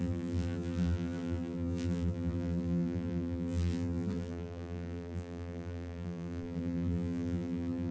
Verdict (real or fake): fake